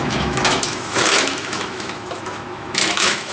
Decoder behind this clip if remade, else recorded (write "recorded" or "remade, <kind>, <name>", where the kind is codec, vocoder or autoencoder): remade, autoencoder, DAC-VAE